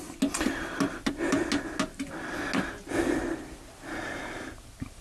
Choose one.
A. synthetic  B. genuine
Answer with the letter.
B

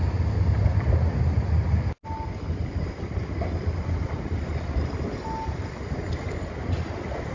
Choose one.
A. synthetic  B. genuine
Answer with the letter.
B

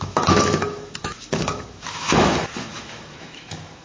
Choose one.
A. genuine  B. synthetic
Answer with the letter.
B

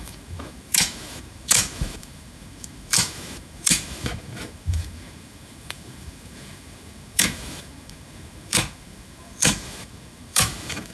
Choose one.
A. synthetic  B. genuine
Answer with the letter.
A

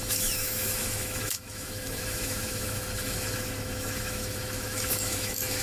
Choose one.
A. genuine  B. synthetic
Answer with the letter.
B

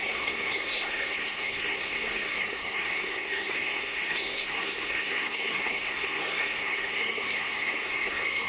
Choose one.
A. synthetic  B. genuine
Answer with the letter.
A